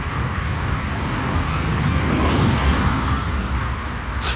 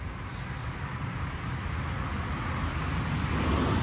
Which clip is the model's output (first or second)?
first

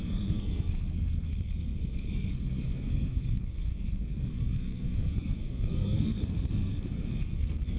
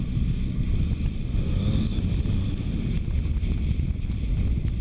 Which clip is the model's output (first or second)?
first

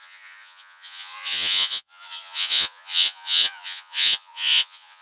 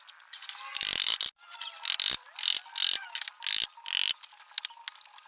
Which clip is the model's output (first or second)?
first